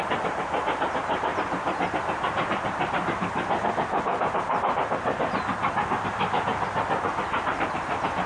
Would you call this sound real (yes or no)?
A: yes